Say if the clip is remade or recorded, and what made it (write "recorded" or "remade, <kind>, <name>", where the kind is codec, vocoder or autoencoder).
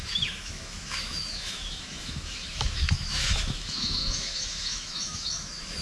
remade, autoencoder, DAC-VAE